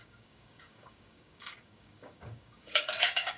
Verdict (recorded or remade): remade